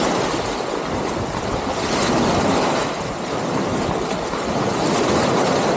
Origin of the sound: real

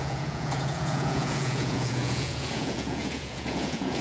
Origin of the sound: fake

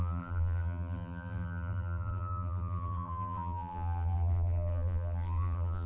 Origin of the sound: fake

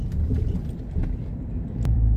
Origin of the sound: fake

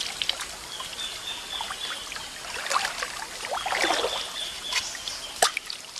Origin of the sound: real